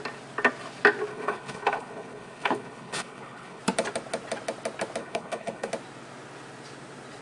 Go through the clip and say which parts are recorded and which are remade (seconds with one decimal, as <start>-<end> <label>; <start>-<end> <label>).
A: 0.0-1.1 recorded; 1.1-3.6 remade; 3.6-5.0 recorded; 5.0-5.7 remade; 5.7-7.2 recorded